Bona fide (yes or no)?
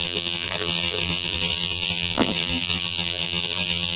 no